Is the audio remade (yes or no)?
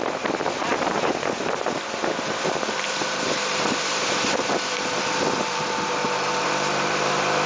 yes